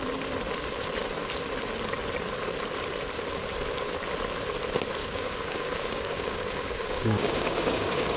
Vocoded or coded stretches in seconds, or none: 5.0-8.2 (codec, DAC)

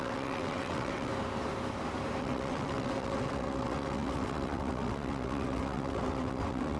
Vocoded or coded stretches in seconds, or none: 0.0-1.1 (vocoder, WaveNeXt); 2.2-6.8